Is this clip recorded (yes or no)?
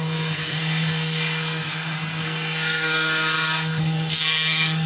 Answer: no